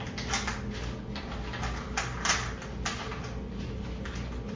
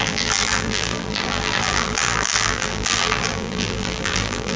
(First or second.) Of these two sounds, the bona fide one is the first